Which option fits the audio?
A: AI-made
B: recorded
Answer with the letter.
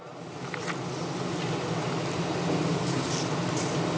B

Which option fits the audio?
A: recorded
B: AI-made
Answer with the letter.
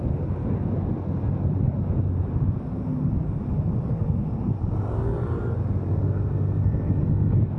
A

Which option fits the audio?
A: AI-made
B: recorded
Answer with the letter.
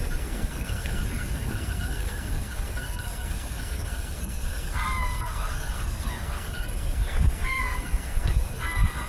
A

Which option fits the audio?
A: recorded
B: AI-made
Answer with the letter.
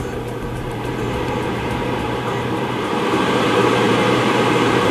B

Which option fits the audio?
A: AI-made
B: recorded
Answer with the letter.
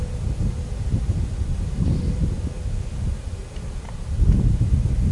B